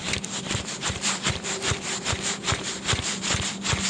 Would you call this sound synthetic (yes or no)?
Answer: yes